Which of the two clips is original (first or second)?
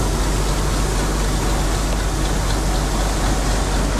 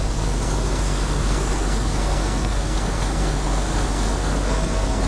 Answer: first